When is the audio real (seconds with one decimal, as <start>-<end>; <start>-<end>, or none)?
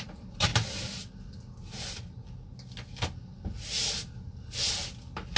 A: 0.0-5.4